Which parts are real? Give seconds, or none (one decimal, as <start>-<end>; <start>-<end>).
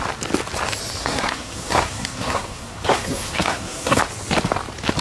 0.0-1.0; 4.0-5.0